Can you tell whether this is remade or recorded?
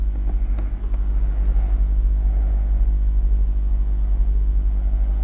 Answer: recorded